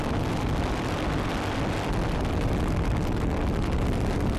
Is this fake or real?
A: real